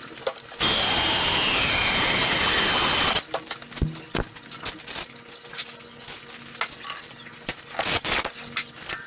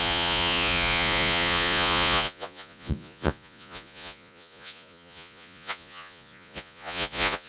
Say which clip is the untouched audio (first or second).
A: first